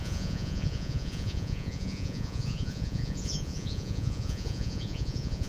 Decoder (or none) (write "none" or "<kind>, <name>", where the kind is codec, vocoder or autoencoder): vocoder, Vocos